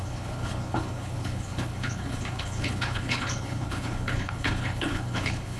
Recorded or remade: remade